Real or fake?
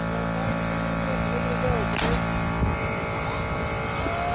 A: real